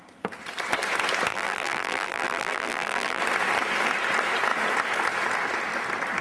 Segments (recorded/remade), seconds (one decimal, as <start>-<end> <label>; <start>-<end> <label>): 0.0-1.3 recorded; 1.3-3.2 remade; 3.2-6.2 recorded